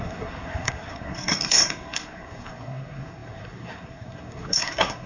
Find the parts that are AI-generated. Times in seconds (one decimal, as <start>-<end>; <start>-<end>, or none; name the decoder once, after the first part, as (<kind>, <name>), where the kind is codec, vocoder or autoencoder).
0.0-5.1 (codec, SNAC)

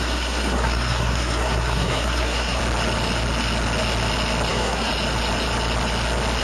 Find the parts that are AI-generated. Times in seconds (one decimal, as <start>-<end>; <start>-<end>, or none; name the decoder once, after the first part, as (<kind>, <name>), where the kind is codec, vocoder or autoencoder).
0.0-2.6 (codec, SNAC); 4.5-4.9

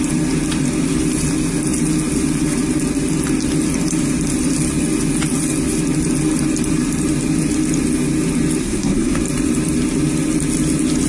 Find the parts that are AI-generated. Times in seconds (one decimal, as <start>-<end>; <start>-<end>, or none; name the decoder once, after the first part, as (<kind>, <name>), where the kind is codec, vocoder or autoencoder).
8.6-9.2 (codec, SNAC)

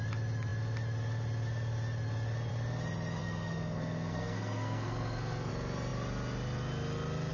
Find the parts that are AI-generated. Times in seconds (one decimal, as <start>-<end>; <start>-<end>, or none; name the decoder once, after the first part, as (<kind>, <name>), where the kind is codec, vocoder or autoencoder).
3.2-5.5 (codec, SNAC)

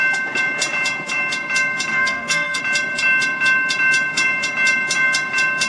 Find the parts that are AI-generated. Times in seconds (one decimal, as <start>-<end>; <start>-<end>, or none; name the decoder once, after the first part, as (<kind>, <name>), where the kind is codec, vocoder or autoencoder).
1.9-2.6 (codec, SNAC)

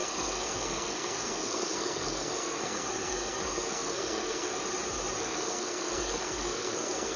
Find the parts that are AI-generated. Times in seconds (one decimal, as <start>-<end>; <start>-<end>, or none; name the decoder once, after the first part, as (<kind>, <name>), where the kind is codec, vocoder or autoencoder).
0.0-4.5 (codec, SNAC); 5.2-7.2